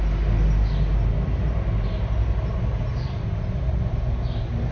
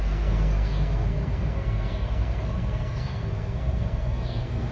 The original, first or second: first